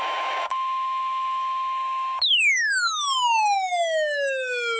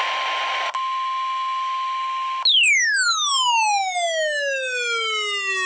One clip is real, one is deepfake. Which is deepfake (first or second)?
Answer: first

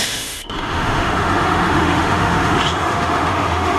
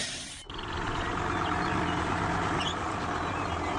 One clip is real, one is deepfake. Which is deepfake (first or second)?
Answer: first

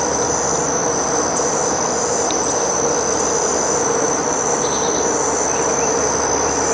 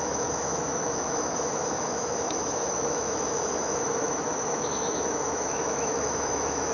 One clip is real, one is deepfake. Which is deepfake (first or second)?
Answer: second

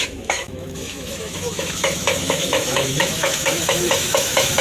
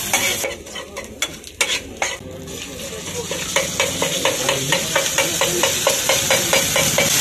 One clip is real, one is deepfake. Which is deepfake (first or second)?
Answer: first